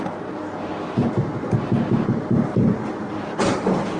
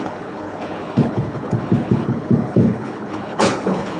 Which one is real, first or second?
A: first